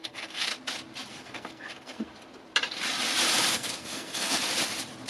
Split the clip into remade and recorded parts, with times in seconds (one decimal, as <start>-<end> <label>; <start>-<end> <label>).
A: 0.0-0.5 remade; 0.5-1.1 recorded; 1.1-2.1 remade; 2.1-3.5 recorded; 3.5-4.4 remade; 4.4-5.1 recorded